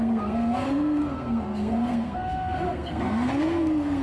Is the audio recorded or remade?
remade